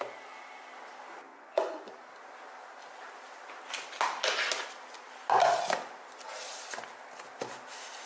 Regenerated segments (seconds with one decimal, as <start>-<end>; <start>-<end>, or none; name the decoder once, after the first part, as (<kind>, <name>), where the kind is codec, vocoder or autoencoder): 1.3-1.9 (vocoder, Vocos)